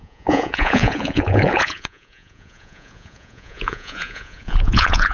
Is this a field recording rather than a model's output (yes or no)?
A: no